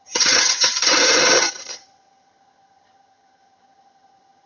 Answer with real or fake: fake